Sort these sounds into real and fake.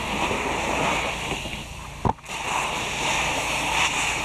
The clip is real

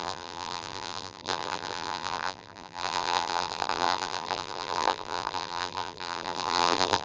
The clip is fake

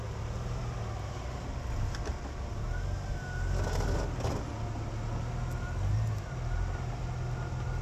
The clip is real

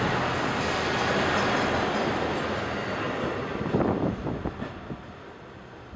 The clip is real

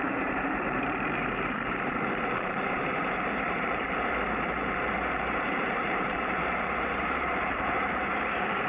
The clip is fake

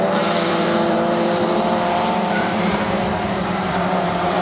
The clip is fake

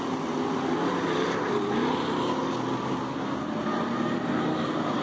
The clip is real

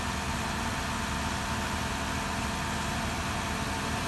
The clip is real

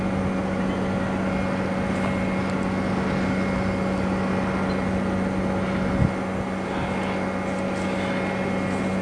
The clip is real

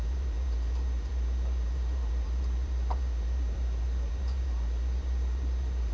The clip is fake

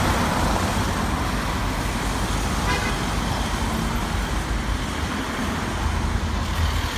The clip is real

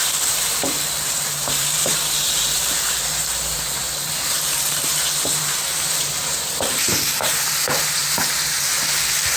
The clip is fake